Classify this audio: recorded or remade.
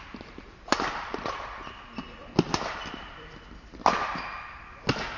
recorded